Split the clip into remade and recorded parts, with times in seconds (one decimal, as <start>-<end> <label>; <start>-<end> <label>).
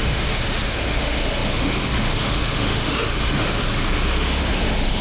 0.0-5.0 remade